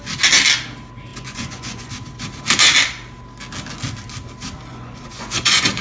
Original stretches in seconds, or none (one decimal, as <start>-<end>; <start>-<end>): 0.0-1.1; 1.9-4.7